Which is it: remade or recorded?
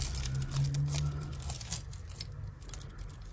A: recorded